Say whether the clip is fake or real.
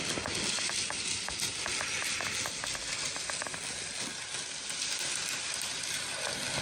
real